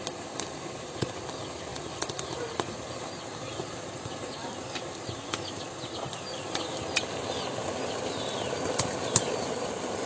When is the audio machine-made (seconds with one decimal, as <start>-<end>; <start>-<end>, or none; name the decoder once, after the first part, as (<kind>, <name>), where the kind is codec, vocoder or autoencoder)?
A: none